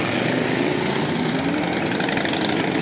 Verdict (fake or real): fake